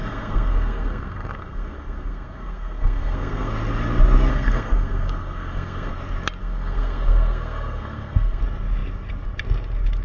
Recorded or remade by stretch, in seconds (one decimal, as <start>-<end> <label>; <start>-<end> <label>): 0.0-3.5 remade; 3.5-4.3 recorded; 4.3-5.9 remade; 5.9-6.4 recorded; 6.4-8.4 remade; 8.4-10.0 recorded